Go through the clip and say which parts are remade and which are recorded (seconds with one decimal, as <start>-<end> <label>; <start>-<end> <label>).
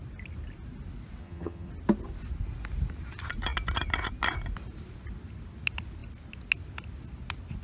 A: 0.0-1.2 recorded; 1.2-1.7 remade; 1.7-7.6 recorded